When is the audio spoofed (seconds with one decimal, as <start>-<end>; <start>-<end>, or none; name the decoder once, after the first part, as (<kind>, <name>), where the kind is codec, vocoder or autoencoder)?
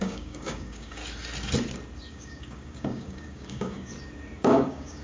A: 0.0-1.0 (codec, DAC); 2.1-3.9; 4.4-5.0